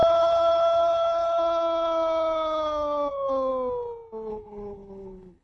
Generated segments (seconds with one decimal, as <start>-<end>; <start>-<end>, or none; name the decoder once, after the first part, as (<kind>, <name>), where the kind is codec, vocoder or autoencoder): 0.0-3.5 (codec, HILCodec); 4.3-5.4